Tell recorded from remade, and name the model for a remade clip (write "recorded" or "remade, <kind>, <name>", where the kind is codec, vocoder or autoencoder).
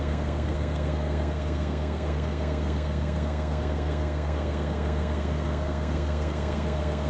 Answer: remade, codec, SNAC